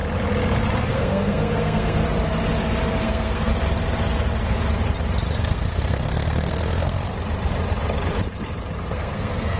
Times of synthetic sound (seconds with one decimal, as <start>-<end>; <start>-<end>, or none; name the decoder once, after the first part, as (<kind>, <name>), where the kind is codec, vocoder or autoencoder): 0.8-2.0 (codec, SNAC); 3.0-3.5; 5.4-7.1; 8.9-9.6